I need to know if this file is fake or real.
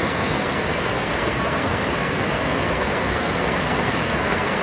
fake